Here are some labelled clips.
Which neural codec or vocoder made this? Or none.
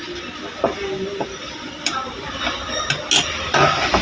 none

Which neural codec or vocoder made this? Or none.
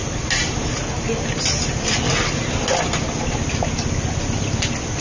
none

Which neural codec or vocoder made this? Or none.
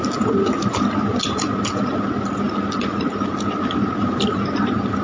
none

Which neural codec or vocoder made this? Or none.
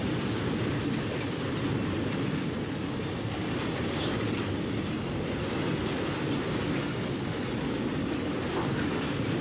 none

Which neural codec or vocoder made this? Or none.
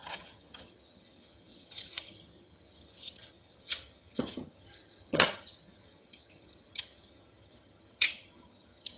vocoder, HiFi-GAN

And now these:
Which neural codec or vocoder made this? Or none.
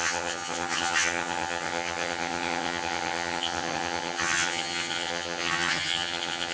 vocoder, HiFi-GAN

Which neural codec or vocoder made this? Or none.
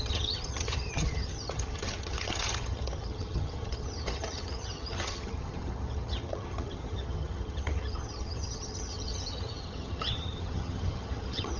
vocoder, HiFi-GAN